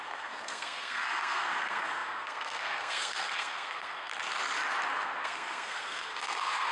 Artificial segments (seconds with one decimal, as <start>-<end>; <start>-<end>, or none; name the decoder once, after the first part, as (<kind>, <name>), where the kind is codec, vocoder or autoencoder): 0.0-4.1 (codec, SNAC); 4.9-6.7